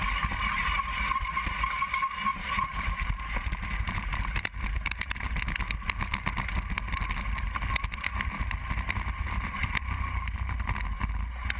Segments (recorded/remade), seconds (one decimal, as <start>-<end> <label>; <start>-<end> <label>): 0.0-2.3 recorded; 2.3-5.4 remade; 5.4-11.6 recorded